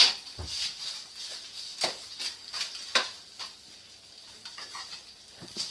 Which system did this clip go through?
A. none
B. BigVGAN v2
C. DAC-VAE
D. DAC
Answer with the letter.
A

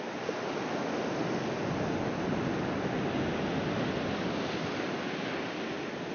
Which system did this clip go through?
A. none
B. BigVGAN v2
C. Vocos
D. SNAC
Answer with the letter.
A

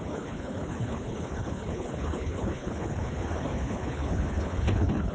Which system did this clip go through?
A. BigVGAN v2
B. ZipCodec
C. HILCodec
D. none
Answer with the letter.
C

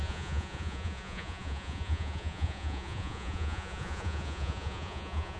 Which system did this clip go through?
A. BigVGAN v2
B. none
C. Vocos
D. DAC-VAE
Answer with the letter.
C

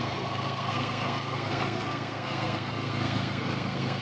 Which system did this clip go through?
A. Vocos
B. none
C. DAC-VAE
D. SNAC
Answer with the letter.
D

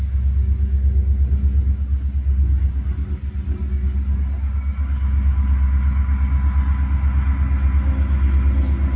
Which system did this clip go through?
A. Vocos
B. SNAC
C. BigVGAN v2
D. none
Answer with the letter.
D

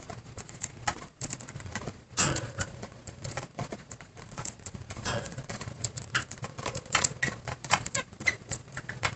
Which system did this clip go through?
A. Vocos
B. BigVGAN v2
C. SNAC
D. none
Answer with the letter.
A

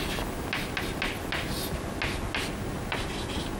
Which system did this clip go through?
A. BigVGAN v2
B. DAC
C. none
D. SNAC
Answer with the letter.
C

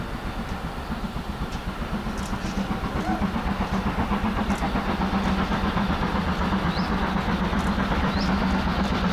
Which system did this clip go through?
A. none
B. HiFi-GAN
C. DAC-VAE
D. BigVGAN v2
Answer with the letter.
A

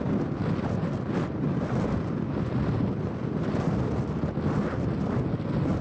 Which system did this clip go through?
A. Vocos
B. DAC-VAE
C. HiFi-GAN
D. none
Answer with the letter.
D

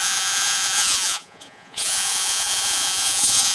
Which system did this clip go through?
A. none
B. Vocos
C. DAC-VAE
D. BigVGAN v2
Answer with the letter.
B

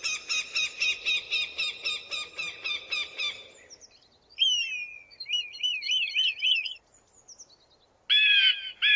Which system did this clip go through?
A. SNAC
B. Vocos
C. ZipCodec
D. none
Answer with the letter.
D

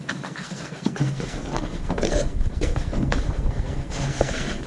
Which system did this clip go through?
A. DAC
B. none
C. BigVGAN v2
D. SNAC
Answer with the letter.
D